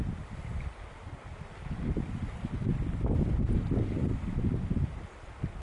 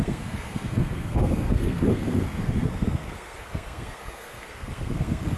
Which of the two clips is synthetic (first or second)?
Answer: second